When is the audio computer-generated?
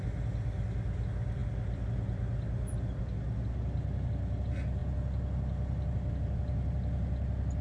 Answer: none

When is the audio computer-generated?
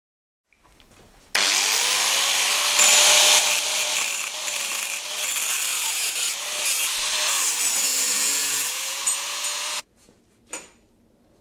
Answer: 5.7-6.3; 7.9-10.2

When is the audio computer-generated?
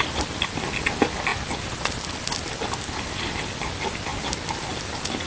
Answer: none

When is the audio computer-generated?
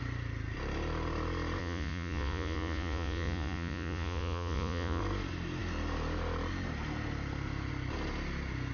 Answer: 1.6-5.0